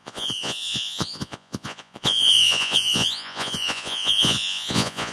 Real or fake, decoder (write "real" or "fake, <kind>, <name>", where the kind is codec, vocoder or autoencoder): fake, vocoder, Vocos